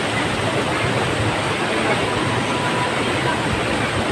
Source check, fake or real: real